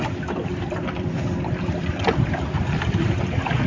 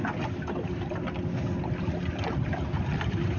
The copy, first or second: first